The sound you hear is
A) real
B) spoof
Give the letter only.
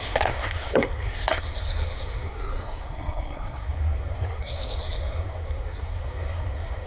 B